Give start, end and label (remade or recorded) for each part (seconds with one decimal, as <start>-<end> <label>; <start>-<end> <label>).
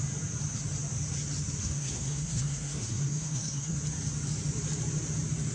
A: 0.0-1.6 recorded; 1.6-3.8 remade; 3.8-5.5 recorded